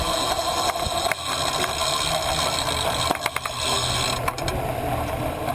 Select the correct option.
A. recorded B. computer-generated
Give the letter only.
A